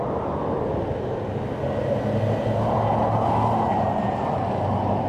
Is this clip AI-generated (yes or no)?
no